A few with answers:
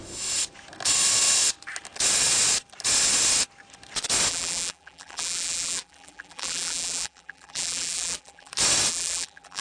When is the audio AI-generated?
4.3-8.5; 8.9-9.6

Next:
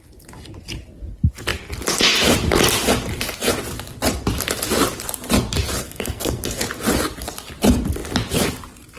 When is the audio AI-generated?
5.8-6.6

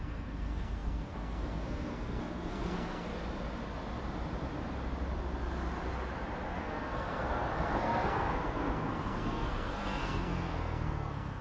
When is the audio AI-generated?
0.0-3.1; 6.5-11.4

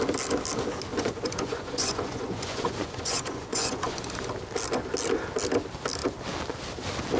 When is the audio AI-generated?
0.9-4.0

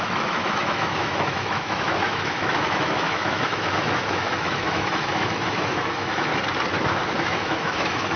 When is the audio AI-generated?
0.0-6.3; 7.2-8.2

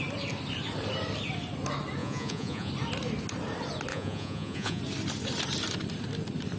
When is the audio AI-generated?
2.0-2.7; 3.9-4.8